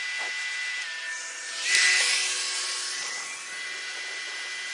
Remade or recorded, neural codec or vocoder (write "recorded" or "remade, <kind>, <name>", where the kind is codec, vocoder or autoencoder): recorded